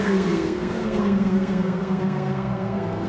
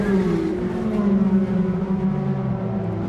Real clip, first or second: second